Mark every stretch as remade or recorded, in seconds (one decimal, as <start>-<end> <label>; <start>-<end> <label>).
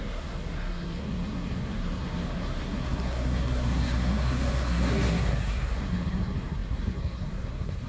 0.0-7.9 remade